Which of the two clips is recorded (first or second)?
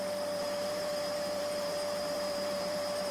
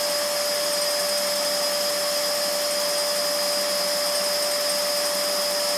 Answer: second